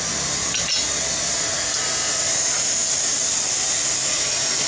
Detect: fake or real real